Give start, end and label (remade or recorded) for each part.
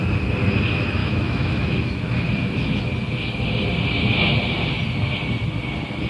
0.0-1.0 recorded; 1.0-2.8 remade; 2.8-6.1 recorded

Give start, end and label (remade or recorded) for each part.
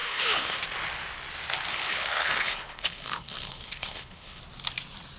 0.0-0.6 remade; 0.6-1.7 recorded; 1.7-4.4 remade; 4.4-5.2 recorded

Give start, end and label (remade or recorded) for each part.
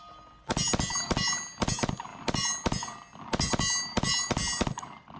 0.0-5.2 recorded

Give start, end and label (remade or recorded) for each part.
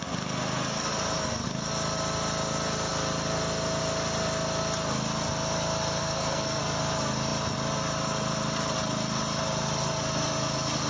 0.0-6.0 recorded; 6.0-6.6 remade; 6.6-10.9 recorded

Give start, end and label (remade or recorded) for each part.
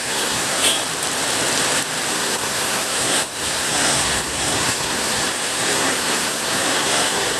0.0-0.8 remade; 0.8-2.1 recorded; 2.1-7.4 remade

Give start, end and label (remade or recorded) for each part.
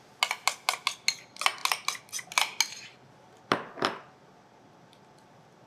0.0-5.7 recorded